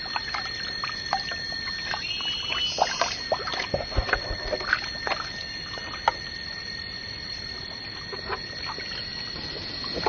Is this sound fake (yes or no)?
no